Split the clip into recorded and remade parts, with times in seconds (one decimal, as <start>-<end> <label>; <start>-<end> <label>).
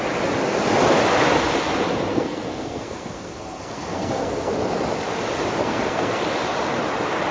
0.0-2.1 recorded; 2.1-4.5 remade; 4.5-5.6 recorded; 5.6-6.2 remade; 6.2-7.3 recorded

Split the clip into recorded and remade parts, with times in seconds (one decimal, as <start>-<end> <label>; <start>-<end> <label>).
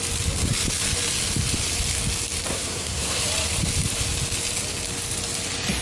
0.0-2.5 recorded; 2.5-3.2 remade; 3.2-5.8 recorded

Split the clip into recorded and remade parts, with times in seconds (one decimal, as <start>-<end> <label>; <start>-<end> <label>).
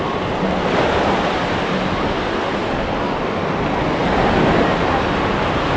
0.0-5.8 recorded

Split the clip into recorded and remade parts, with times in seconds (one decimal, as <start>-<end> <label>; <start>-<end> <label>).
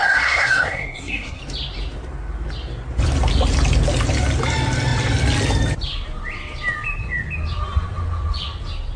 0.0-1.4 remade; 1.4-9.0 recorded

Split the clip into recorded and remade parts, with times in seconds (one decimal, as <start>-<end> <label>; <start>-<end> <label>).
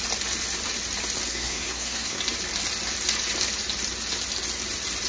0.0-1.3 recorded; 1.3-2.2 remade; 2.2-5.1 recorded